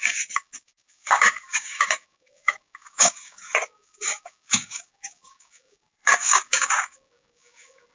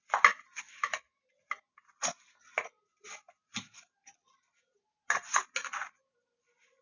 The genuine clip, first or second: second